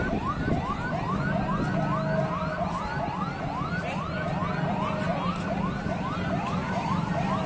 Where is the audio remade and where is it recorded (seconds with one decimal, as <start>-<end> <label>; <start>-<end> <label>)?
0.0-7.5 recorded